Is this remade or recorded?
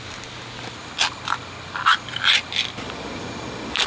recorded